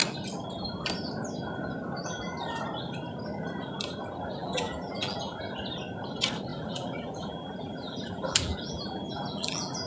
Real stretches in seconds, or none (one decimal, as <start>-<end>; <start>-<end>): 0.0-4.4; 5.4-6.5